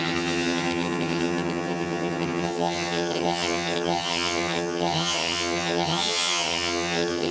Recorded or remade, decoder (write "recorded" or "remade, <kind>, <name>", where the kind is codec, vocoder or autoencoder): remade, vocoder, HiFi-GAN